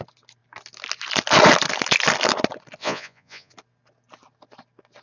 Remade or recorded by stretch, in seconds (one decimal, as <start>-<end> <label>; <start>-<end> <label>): 0.0-2.8 recorded; 2.8-3.5 remade; 3.5-5.0 recorded